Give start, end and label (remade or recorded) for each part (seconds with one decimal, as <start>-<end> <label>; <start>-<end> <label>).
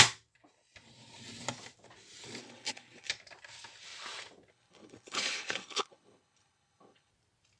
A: 0.0-2.4 recorded; 2.4-3.1 remade; 3.1-4.5 recorded; 4.5-7.1 remade; 7.1-7.6 recorded